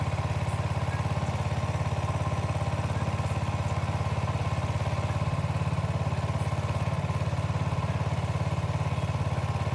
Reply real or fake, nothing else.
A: real